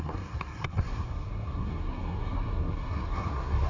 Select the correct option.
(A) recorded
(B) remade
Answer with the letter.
B